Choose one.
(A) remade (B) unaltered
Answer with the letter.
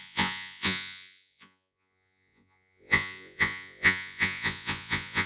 A